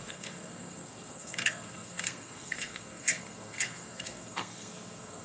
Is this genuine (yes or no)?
no